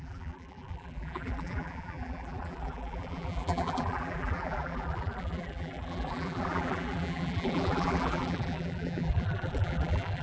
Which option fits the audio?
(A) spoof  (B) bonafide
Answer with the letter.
A